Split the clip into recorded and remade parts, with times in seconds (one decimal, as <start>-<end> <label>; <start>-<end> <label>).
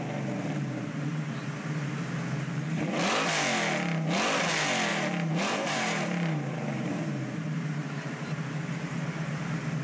0.0-4.9 recorded; 4.9-9.4 remade; 9.4-9.8 recorded